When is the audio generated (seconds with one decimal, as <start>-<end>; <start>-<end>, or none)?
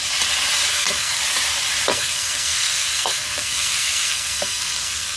0.7-1.2; 1.9-5.2